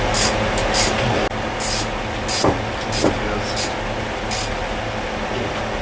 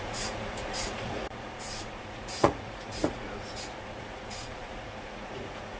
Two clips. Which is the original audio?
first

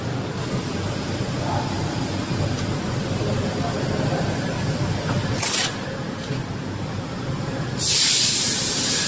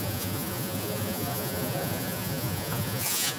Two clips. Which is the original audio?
first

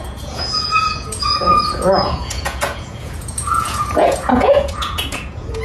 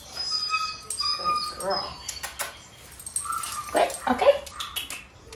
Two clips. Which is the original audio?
second